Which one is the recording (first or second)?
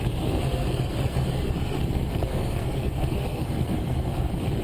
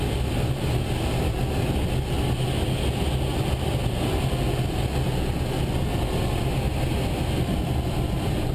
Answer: second